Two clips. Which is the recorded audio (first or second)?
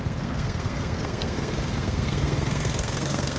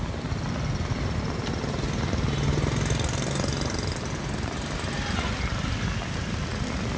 second